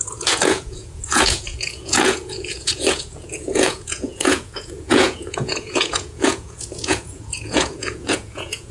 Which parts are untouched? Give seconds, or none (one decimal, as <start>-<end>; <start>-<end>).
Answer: none